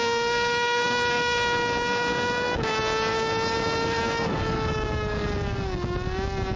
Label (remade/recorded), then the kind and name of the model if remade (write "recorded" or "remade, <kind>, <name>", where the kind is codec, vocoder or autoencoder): remade, codec, DAC